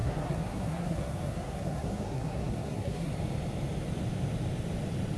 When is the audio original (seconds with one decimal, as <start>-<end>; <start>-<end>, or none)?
3.1-5.2